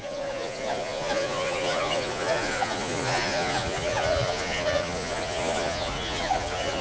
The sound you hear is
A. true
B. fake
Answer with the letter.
B